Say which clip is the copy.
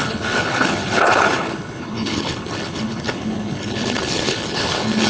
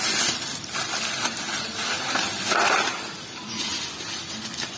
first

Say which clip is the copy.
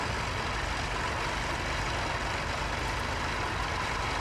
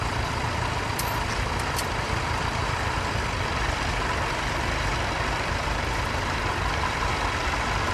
second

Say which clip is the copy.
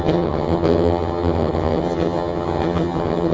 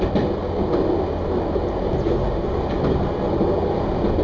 first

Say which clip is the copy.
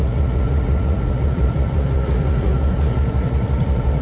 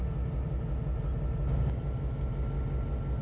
first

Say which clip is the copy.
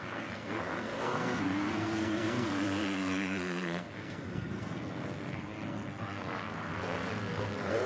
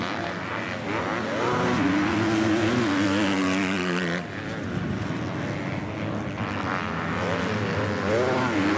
first